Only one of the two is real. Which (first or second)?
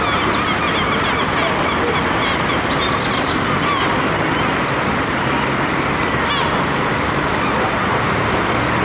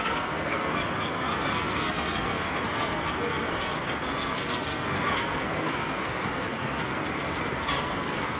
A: first